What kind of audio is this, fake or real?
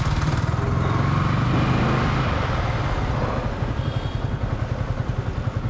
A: real